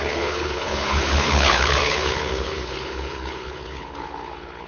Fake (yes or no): yes